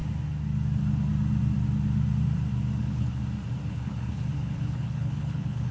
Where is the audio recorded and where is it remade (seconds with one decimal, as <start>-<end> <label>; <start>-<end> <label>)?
0.0-2.8 recorded; 2.8-3.2 remade; 3.2-3.7 recorded; 3.7-5.7 remade